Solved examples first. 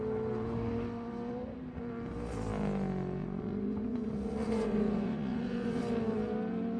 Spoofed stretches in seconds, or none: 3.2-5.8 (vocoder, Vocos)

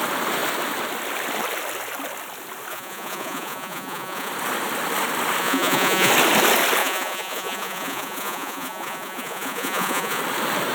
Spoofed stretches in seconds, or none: 2.7-4.3 (vocoder, Vocos); 5.4-6.1; 6.8-10.2

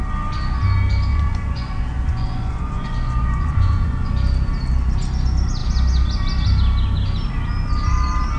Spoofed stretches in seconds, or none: 1.1-4.1 (vocoder, Vocos)

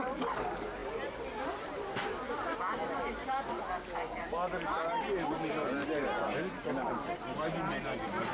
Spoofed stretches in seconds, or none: none

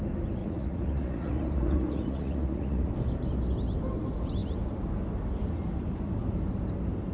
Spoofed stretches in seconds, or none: 0.4-2.9 (vocoder, Vocos)

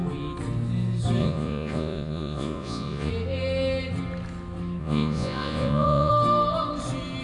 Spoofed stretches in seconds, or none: 1.2-3.1 (vocoder, Vocos); 4.8-6.1